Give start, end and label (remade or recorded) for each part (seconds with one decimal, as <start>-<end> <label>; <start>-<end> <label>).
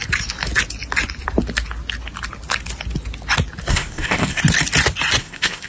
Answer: 0.0-3.7 recorded; 3.7-4.4 remade; 4.4-5.2 recorded; 5.2-5.7 remade